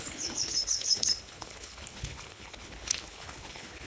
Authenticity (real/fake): fake